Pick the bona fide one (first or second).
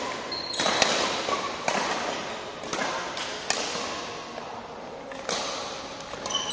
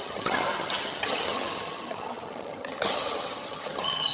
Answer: first